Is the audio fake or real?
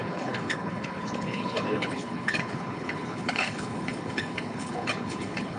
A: fake